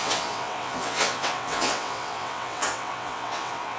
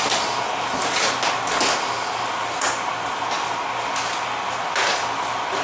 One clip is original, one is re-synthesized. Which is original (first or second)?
second